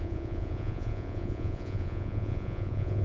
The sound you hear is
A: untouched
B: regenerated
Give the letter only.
B